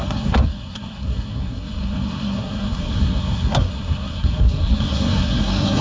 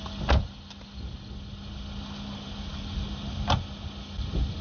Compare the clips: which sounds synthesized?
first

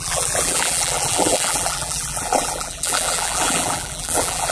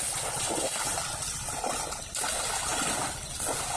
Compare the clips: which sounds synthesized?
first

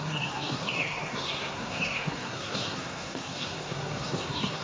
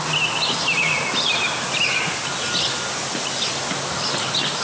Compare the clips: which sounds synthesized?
first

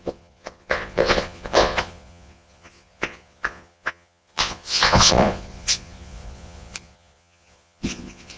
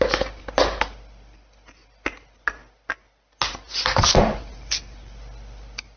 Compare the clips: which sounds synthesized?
first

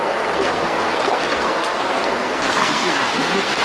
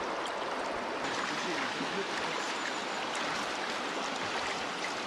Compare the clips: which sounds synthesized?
first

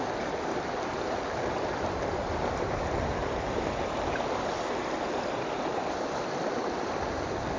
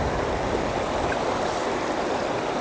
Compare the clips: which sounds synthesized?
second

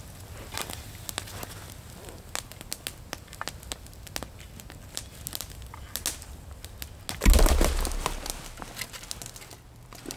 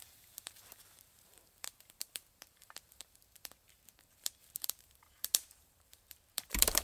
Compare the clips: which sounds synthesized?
second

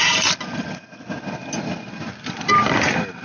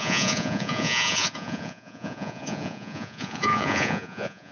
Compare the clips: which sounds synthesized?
second